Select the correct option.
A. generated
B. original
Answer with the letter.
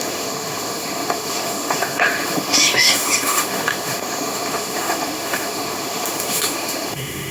A